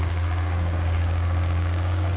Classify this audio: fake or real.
fake